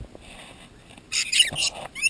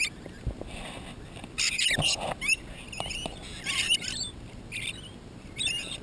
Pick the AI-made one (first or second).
second